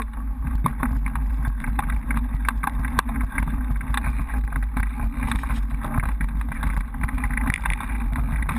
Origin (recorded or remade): recorded